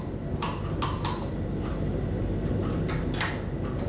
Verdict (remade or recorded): recorded